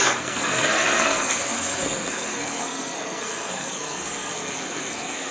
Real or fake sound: fake